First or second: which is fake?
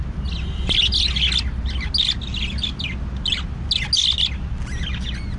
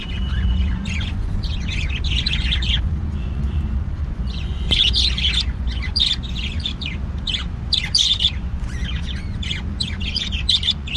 second